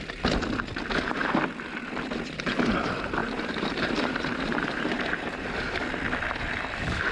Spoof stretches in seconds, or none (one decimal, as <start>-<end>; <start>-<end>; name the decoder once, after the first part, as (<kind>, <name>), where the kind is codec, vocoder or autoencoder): 3.2-5.8 (vocoder, BigVGAN v2)